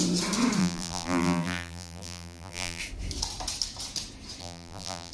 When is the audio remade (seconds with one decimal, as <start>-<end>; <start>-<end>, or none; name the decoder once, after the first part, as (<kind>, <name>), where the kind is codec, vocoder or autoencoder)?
0.6-2.8 (vocoder, BigVGAN v2); 4.4-5.1